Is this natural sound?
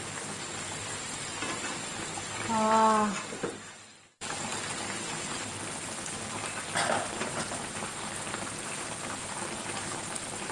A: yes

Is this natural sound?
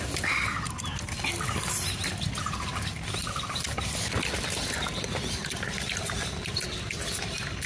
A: yes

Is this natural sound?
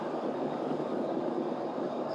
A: no